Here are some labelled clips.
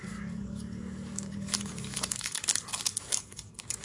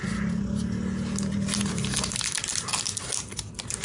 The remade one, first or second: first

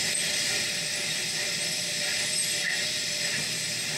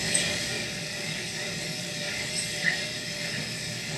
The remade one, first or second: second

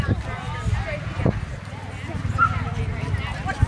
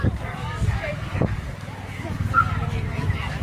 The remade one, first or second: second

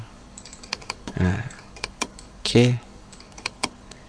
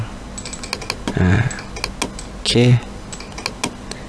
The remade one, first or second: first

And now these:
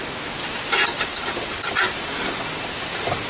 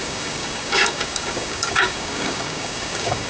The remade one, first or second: second